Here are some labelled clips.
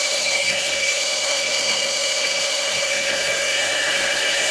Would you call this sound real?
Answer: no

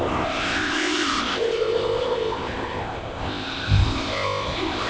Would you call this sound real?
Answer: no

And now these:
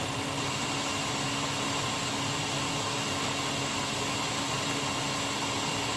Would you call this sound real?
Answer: yes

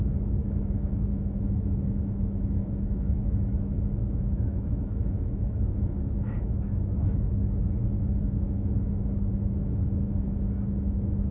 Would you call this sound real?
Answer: no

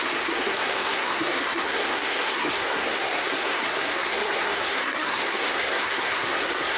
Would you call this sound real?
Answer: no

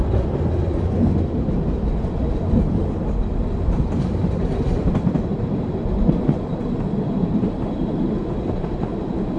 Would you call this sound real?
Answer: yes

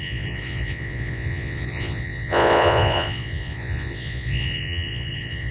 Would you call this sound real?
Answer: no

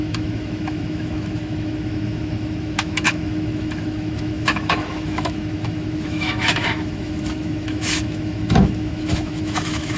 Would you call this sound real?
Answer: no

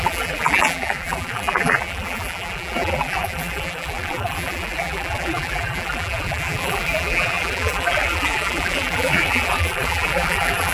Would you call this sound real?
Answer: no